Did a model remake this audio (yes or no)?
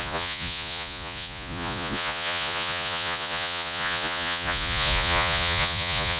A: yes